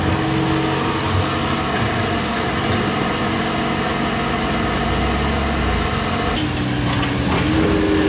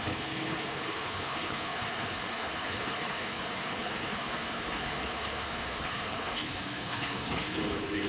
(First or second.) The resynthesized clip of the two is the second